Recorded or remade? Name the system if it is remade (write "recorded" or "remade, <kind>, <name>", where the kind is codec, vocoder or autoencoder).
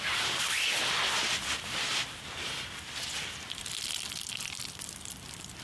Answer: recorded